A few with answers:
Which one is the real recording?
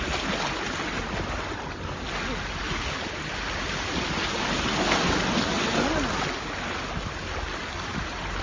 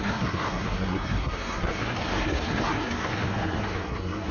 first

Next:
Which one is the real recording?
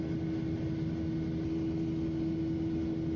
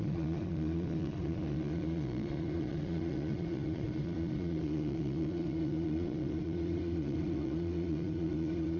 first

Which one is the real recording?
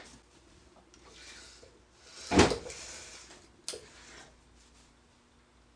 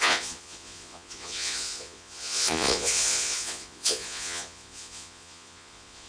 first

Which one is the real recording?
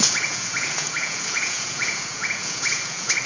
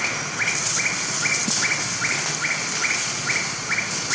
second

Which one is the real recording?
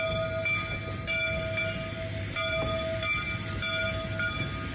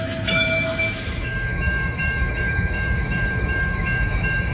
first